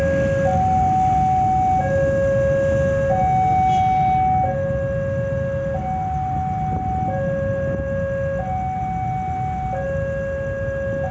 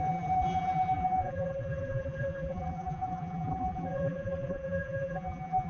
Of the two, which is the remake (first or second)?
second